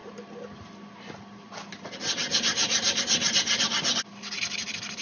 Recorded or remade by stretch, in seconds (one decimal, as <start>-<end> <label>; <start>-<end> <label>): 0.0-5.0 recorded